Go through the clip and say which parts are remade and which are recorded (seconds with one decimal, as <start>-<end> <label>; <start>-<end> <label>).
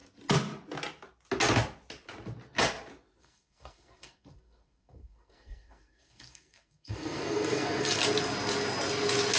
0.0-3.2 recorded; 3.2-8.0 remade; 8.0-9.4 recorded